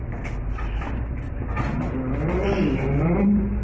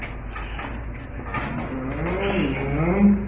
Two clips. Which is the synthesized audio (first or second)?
first